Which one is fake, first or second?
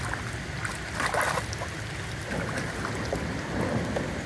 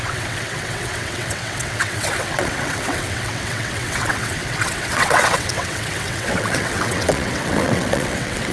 second